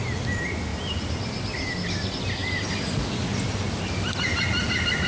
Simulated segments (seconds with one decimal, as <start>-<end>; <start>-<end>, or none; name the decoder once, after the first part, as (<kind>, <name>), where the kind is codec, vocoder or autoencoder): 0.7-1.7 (vocoder, BigVGAN v2); 2.4-3.0; 4.3-5.1